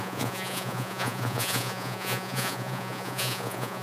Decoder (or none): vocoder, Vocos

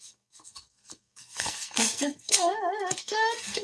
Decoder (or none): codec, SNAC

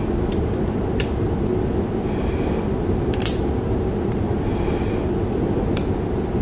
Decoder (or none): none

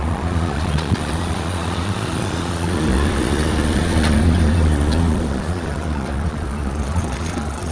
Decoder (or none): vocoder, Vocos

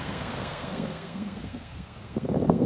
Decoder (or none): codec, SNAC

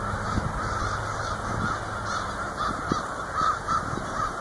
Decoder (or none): none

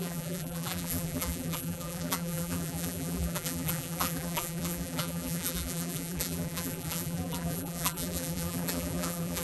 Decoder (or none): vocoder, BigVGAN v2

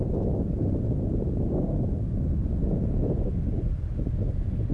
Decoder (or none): none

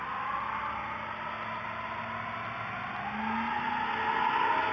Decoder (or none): none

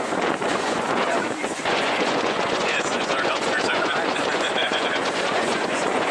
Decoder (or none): vocoder, Vocos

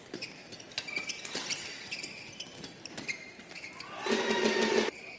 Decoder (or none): none